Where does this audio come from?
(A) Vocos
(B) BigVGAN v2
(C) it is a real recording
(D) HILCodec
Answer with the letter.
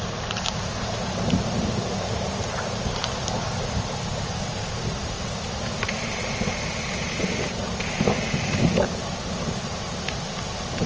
B